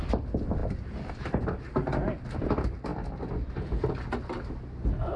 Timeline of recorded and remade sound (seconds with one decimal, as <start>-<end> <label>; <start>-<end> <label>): 0.0-5.2 recorded